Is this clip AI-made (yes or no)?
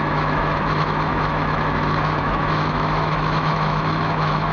yes